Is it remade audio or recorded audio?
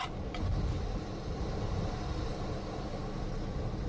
remade